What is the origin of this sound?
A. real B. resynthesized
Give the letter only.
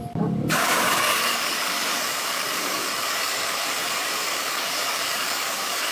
B